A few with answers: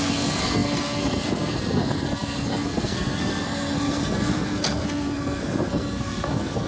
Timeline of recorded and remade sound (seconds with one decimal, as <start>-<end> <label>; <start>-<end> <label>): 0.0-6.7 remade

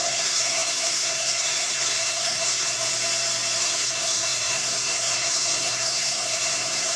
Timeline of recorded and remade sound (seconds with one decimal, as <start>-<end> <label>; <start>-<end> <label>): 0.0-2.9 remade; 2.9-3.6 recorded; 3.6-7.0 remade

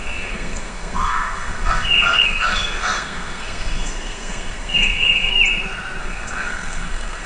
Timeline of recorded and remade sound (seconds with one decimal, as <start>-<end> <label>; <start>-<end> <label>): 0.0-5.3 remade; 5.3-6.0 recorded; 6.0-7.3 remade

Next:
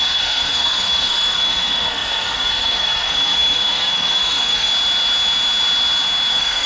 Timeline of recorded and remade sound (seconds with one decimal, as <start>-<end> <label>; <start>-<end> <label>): 0.0-4.7 remade; 4.7-6.3 recorded; 6.3-6.7 remade

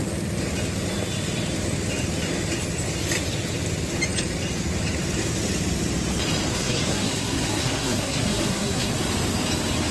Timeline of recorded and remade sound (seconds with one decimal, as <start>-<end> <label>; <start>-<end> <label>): 0.0-6.5 recorded; 6.5-8.9 remade; 8.9-9.9 recorded

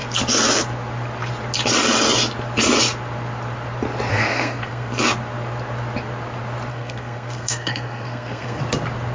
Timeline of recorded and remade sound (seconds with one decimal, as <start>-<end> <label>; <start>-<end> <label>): 0.0-4.1 recorded; 4.1-4.9 remade; 4.9-6.7 recorded; 6.7-8.6 remade; 8.6-9.1 recorded